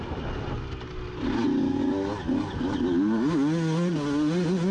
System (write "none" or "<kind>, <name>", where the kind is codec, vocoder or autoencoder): none